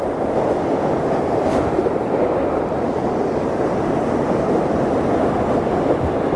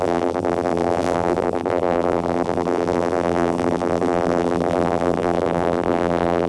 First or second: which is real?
first